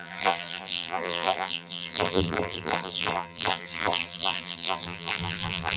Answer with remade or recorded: remade